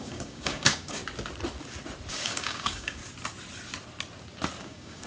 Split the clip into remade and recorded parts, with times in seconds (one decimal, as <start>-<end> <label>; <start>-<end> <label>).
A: 0.0-1.0 remade; 1.0-2.1 recorded; 2.1-3.0 remade; 3.0-4.6 recorded; 4.6-5.1 remade